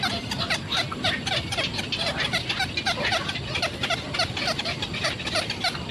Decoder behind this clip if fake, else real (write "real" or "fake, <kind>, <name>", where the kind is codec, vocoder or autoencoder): real